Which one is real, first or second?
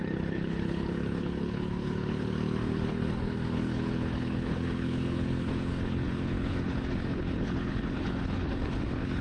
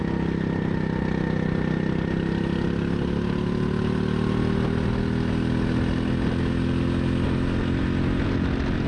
second